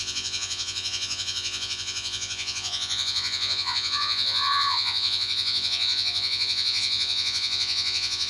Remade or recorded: remade